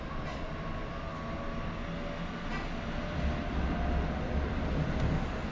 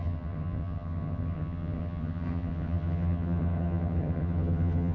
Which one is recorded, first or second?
first